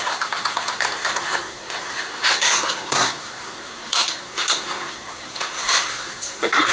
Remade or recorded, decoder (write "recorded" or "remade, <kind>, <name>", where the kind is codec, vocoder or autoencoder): remade, codec, SNAC